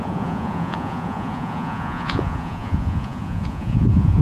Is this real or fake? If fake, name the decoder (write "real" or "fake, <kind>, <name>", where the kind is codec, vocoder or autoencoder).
fake, vocoder, Vocos